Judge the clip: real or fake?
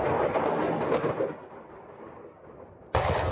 real